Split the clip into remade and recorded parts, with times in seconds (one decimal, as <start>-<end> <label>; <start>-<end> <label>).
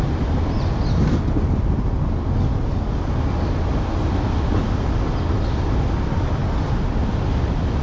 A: 0.0-7.8 recorded